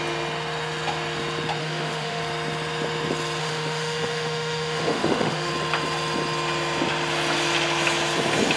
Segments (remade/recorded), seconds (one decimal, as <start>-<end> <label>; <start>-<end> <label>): 0.0-1.6 recorded; 1.6-2.2 remade; 2.2-3.4 recorded; 3.4-5.5 remade; 5.5-8.6 recorded